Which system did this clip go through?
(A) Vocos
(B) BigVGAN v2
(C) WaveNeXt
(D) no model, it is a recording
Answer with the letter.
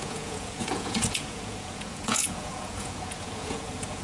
A